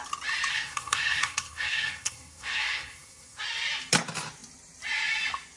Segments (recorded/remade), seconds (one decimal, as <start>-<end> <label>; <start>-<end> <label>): 0.0-0.5 recorded; 0.5-3.4 remade; 3.4-5.6 recorded